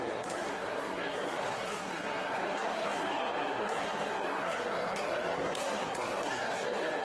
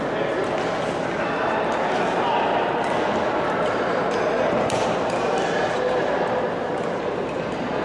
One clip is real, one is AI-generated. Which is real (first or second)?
second